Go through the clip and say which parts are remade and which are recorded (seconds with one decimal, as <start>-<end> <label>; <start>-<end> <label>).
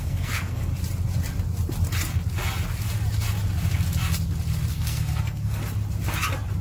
0.0-0.7 remade; 0.7-4.7 recorded; 4.7-5.6 remade; 5.6-6.6 recorded